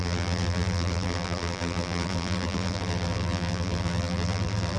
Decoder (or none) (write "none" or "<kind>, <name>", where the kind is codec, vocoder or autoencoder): vocoder, BigVGAN v2